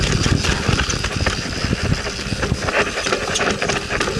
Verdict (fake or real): real